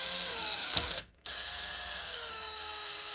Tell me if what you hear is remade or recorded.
remade